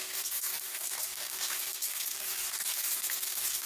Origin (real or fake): fake